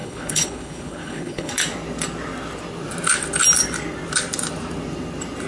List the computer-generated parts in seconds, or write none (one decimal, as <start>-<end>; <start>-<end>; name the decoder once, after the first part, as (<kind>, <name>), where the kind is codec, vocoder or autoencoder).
0.0-1.5 (codec, HILCodec)